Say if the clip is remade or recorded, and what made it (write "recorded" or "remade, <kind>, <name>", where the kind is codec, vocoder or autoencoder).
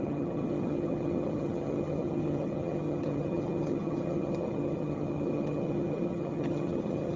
remade, vocoder, HiFi-GAN